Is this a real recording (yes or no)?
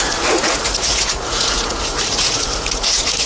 no